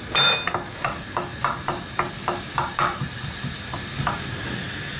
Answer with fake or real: real